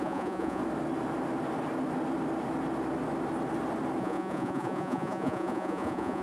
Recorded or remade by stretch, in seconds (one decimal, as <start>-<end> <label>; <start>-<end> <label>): 0.0-0.6 remade; 0.6-4.0 recorded; 4.0-6.2 remade